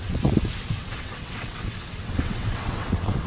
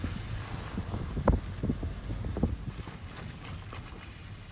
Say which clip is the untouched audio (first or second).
second